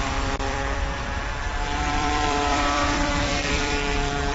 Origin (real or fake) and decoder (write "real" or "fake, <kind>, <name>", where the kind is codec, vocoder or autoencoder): fake, vocoder, BigVGAN v2